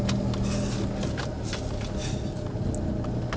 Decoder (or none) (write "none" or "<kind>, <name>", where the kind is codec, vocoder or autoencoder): none